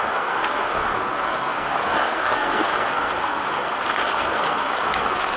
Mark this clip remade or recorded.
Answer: remade